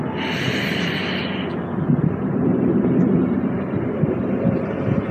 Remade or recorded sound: remade